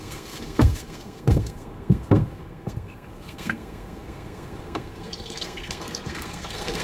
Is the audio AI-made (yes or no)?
yes